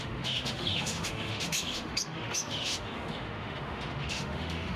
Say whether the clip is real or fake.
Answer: fake